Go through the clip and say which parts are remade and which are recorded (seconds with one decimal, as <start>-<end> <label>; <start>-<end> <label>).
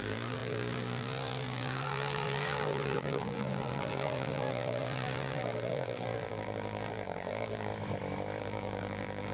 0.0-7.7 remade; 7.7-8.4 recorded; 8.4-9.3 remade